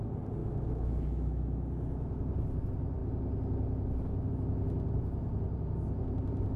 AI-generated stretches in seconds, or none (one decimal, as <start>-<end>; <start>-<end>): 0.4-1.4